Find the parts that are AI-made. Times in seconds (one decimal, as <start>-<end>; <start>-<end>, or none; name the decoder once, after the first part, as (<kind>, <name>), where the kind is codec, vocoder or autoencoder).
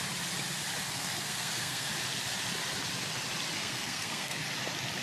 0.8-1.9 (codec, SNAC); 3.6-4.4